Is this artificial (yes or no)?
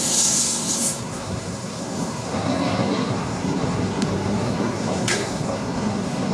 yes